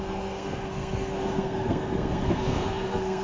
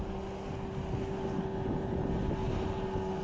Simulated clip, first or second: first